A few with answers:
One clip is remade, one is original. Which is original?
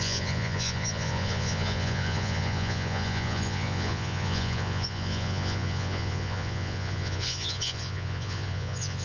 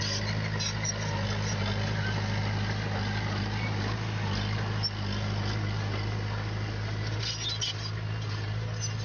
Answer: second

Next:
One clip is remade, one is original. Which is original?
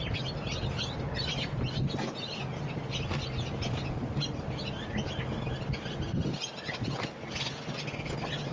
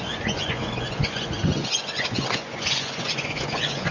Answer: first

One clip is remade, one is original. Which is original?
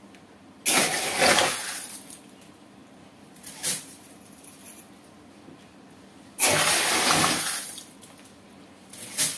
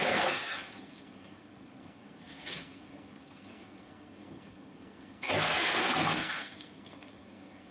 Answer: first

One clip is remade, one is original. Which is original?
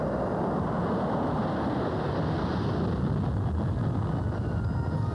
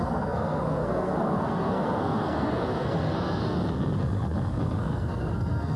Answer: first